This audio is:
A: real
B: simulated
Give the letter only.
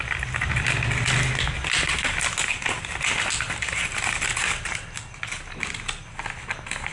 A